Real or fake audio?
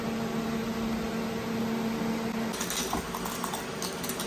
real